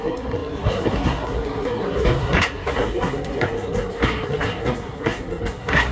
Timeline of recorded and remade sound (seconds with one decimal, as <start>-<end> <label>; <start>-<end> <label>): 0.0-5.9 remade